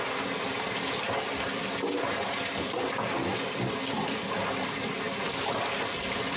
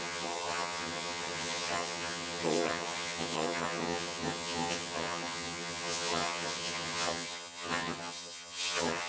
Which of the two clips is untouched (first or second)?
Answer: first